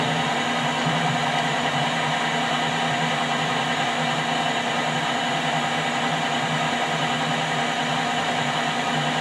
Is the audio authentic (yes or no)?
yes